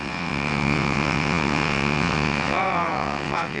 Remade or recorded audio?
remade